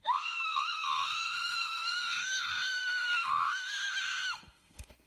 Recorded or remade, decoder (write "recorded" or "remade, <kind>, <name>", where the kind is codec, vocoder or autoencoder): remade, autoencoder, DAC-VAE